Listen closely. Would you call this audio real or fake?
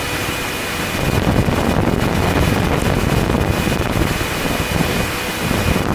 real